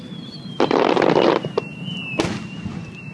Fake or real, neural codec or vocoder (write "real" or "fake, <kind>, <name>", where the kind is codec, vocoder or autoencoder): real